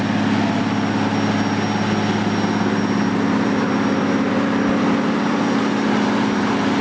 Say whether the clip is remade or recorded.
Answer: recorded